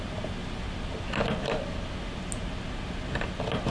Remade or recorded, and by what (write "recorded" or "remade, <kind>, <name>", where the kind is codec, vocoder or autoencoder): recorded